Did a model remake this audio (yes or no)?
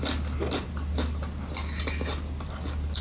no